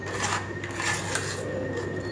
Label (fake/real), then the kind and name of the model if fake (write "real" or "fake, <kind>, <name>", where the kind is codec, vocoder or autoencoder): real